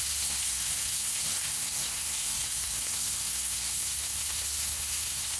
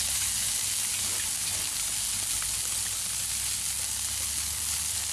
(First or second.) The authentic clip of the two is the second